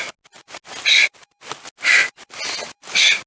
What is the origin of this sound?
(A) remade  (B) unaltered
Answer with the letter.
B